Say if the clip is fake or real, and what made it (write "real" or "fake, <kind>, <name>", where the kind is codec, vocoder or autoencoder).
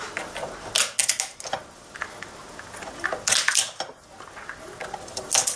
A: real